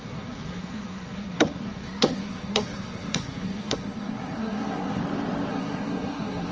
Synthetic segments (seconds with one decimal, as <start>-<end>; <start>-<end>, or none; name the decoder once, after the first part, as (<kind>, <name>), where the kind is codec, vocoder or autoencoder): 0.0-5.0 (codec, SNAC); 5.5-6.5